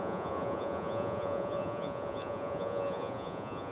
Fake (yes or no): yes